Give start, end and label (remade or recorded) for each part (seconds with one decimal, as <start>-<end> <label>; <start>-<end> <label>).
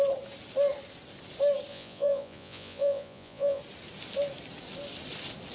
0.0-1.7 recorded; 1.7-3.6 remade; 3.6-5.5 recorded